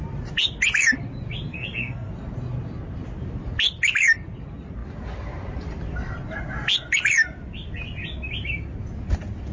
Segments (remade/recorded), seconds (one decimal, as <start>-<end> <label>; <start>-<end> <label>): 0.0-1.5 recorded; 1.5-2.1 remade; 2.1-9.5 recorded